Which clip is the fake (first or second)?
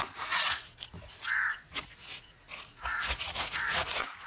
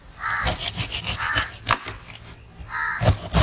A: first